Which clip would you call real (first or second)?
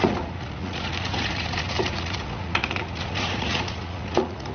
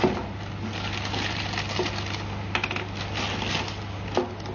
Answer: second